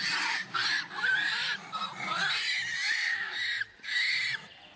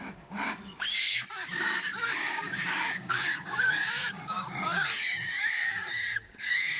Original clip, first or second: first